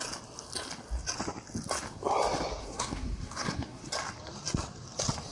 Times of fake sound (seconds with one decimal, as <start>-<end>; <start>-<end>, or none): 2.6-3.8